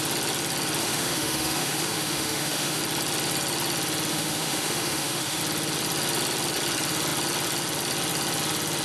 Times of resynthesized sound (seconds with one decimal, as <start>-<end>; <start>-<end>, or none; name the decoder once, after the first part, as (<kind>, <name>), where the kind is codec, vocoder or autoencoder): 0.8-2.8 (autoencoder, DAC-VAE); 4.1-5.4